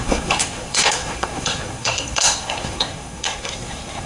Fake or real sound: fake